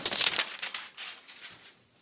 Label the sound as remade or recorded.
recorded